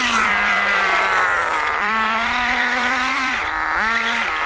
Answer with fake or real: fake